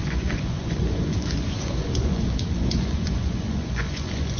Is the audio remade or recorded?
remade